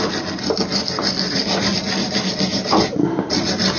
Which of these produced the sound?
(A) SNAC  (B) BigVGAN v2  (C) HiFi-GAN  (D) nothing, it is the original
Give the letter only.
D